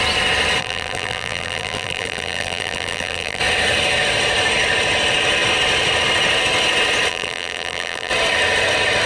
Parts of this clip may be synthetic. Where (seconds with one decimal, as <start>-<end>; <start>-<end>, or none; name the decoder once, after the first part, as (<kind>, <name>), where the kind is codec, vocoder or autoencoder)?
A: 0.6-3.4 (vocoder, BigVGAN v2); 7.1-8.1